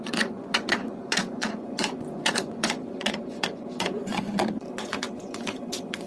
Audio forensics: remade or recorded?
remade